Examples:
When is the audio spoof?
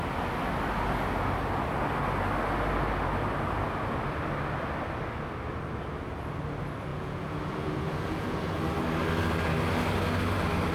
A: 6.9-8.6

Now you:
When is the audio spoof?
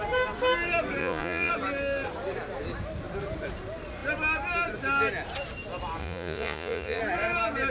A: 1.0-1.5; 6.0-7.0